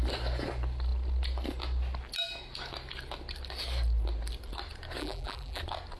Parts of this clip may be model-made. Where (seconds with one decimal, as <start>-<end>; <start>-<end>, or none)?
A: 5.0-5.6

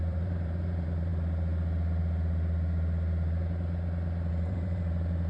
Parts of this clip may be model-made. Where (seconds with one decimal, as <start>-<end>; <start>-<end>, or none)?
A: 0.0-1.1; 4.3-5.3

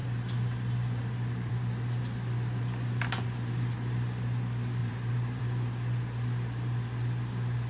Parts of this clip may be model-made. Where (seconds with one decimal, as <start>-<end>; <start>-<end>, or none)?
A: 4.8-5.4

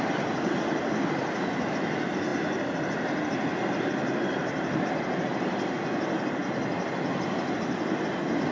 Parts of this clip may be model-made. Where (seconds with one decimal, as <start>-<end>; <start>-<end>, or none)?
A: none

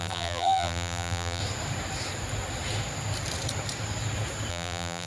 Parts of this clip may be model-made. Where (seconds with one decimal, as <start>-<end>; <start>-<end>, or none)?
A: 0.0-1.4; 4.5-5.1

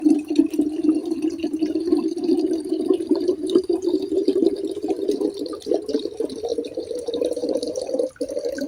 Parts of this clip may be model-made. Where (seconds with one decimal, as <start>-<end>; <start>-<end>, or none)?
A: 1.0-5.1; 7.4-7.9

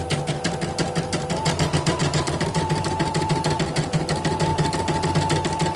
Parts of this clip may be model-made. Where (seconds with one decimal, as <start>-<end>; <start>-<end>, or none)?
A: 2.0-4.0